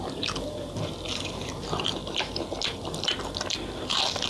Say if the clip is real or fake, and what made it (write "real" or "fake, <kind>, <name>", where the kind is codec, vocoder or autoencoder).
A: fake, vocoder, BigVGAN v2